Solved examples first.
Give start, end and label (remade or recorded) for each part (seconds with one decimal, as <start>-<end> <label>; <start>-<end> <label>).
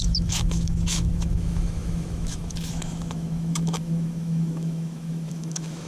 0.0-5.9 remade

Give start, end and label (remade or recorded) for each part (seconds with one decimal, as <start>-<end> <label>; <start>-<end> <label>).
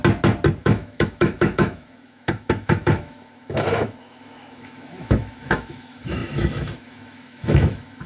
0.0-0.6 recorded; 0.6-8.1 remade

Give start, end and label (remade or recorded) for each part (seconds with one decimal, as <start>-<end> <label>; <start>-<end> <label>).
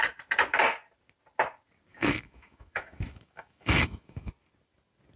0.0-1.9 recorded; 1.9-4.3 remade; 4.3-5.2 recorded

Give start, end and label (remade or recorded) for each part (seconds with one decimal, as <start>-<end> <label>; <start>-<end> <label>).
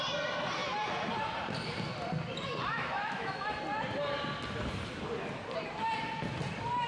0.0-2.7 recorded; 2.7-3.6 remade; 3.6-6.9 recorded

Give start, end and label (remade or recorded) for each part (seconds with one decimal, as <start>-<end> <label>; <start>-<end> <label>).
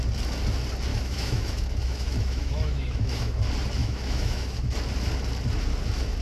0.0-0.9 recorded; 0.9-3.4 remade; 3.4-3.8 recorded; 3.8-4.7 remade; 4.7-6.2 recorded